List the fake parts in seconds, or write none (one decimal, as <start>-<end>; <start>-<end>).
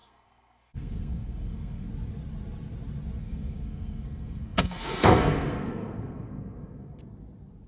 0.0-1.9; 3.2-7.0